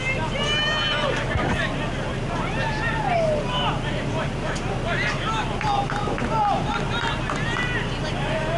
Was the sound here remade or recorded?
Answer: recorded